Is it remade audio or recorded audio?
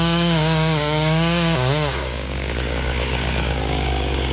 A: remade